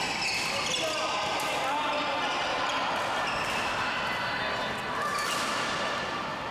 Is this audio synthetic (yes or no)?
no